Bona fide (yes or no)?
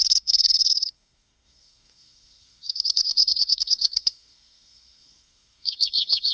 no